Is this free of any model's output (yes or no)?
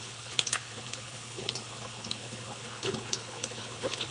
no